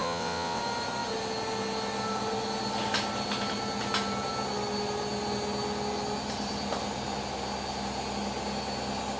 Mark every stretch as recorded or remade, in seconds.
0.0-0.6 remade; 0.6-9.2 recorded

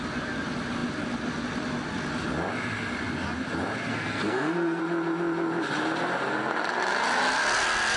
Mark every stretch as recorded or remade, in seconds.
0.0-3.9 recorded; 3.9-4.8 remade; 4.8-8.0 recorded

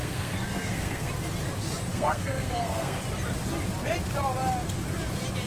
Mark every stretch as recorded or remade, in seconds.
0.0-1.1 remade; 1.1-1.9 recorded; 1.9-3.0 remade; 3.0-5.5 recorded

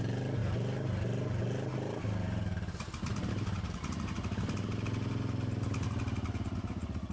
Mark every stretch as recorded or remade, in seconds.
0.0-7.1 recorded

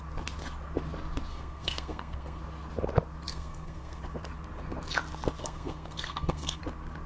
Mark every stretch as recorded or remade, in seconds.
0.0-1.3 recorded; 1.3-2.4 remade; 2.4-3.3 recorded; 3.3-4.0 remade; 4.0-5.4 recorded; 5.4-6.6 remade; 6.6-7.1 recorded

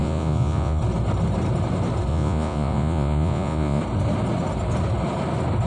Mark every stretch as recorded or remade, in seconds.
0.0-0.8 remade; 0.8-2.1 recorded; 2.1-3.8 remade; 3.8-5.7 recorded